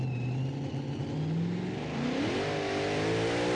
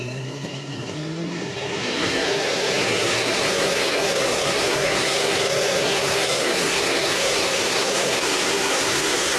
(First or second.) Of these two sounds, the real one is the first